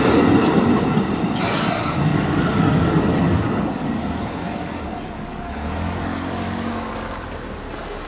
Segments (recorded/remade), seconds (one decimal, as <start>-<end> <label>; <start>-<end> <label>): 0.0-2.1 recorded; 2.1-6.7 remade; 6.7-8.1 recorded